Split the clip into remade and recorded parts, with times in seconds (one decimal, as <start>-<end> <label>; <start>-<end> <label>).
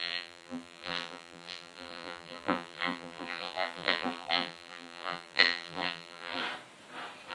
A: 0.0-6.4 remade; 6.4-7.3 recorded